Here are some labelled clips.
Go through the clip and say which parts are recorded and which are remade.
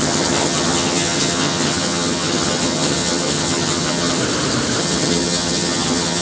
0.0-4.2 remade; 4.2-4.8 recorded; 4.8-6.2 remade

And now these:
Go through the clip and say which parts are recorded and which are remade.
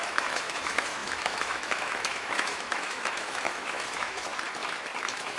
0.0-4.3 remade; 4.3-5.0 recorded; 5.0-5.4 remade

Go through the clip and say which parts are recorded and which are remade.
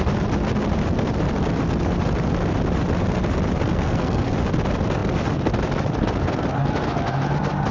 0.0-3.6 recorded; 3.6-4.3 remade; 4.3-7.7 recorded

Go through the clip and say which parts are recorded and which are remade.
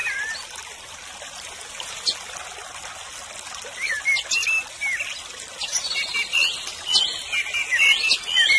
0.0-8.6 recorded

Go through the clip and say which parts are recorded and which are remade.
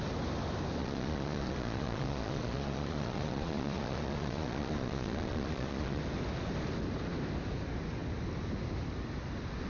0.0-0.8 recorded; 0.8-6.0 remade; 6.0-9.7 recorded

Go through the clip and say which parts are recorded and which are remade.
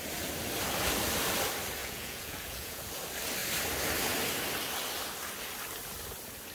0.0-1.8 recorded; 1.8-3.0 remade; 3.0-6.5 recorded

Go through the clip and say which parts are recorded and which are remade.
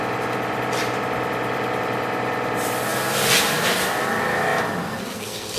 0.0-4.8 recorded; 4.8-5.6 remade